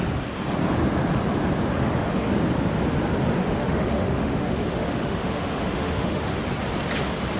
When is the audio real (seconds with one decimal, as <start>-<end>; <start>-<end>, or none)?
0.0-1.7; 2.3-3.4; 6.3-7.4